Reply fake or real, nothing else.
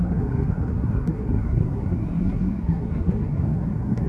fake